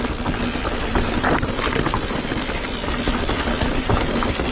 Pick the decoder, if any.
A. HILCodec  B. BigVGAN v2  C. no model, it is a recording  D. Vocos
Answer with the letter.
C